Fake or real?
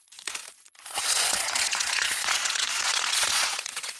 fake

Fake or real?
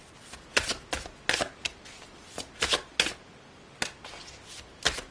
real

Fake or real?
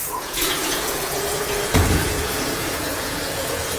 fake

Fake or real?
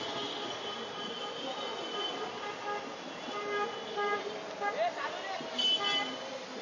real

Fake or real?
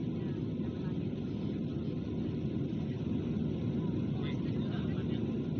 real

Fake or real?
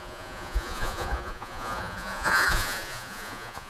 fake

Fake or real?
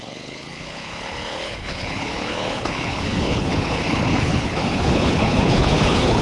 fake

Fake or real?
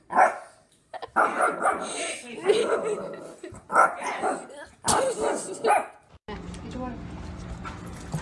real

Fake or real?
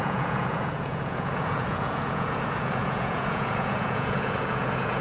fake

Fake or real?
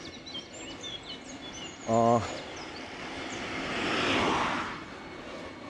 real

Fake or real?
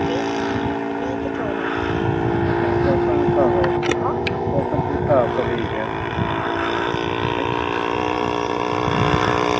real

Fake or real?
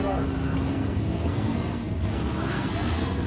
fake